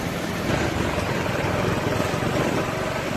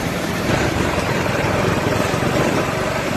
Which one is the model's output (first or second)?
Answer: second